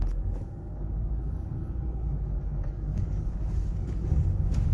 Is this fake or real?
fake